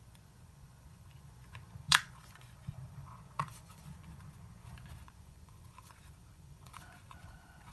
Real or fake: fake